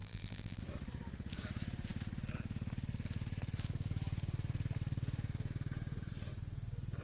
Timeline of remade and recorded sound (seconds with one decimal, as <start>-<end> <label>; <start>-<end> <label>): 0.0-0.6 remade; 0.6-7.0 recorded